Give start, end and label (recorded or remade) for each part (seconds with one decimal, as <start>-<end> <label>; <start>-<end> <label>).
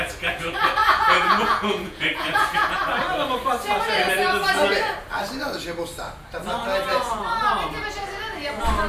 0.0-0.8 recorded; 0.8-2.8 remade; 2.8-6.9 recorded; 6.9-7.5 remade; 7.5-8.9 recorded